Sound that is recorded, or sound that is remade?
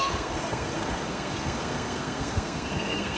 remade